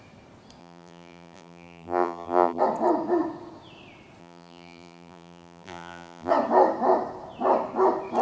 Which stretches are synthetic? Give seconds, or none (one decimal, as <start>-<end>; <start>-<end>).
0.6-2.6; 4.2-6.3

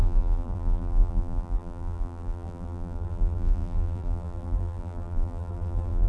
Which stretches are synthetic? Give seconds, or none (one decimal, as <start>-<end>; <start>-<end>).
0.0-6.1

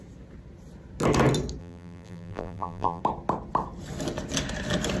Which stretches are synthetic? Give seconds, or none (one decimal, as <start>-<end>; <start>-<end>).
1.6-3.0